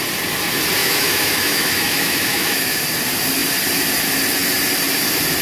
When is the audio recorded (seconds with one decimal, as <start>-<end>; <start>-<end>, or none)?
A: 0.0-0.8; 2.8-5.4